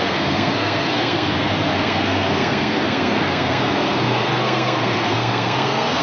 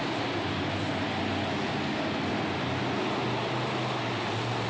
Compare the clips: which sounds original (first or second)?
second